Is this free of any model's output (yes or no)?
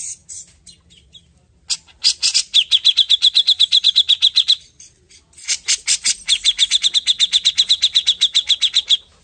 yes